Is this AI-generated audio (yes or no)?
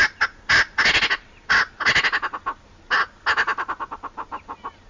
no